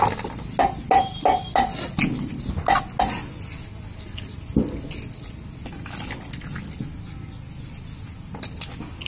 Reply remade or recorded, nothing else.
recorded